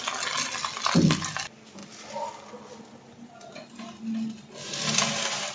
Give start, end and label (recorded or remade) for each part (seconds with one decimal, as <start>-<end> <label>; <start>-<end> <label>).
0.0-5.5 recorded